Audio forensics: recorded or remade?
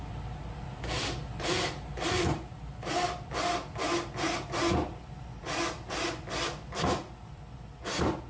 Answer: remade